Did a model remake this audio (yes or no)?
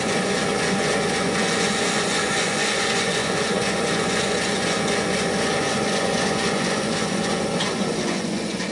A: yes